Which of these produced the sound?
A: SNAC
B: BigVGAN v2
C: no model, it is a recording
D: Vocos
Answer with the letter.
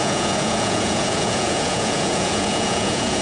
D